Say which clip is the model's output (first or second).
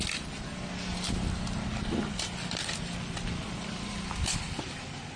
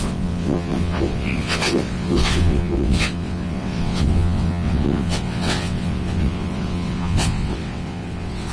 second